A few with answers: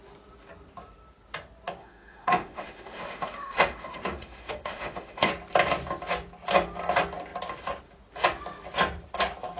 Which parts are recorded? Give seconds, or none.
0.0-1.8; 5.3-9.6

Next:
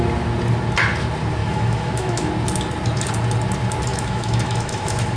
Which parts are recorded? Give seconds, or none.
0.0-1.4; 2.3-3.9

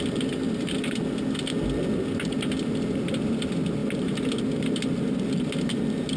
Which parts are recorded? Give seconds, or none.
0.0-6.2